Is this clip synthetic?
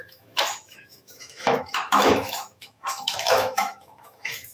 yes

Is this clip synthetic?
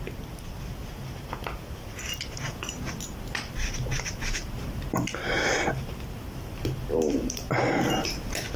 no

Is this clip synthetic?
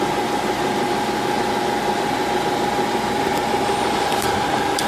no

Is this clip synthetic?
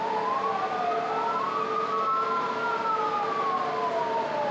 no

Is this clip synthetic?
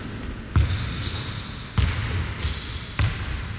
no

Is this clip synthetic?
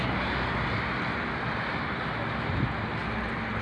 no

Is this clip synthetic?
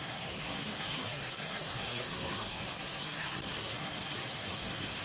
yes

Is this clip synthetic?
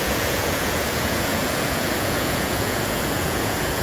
yes